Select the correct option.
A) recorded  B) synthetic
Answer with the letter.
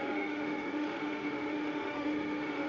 B